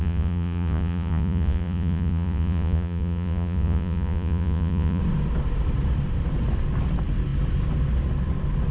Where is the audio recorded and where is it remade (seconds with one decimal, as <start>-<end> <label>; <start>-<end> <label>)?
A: 0.0-5.0 remade; 5.0-8.7 recorded